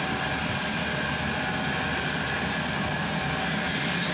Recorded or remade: recorded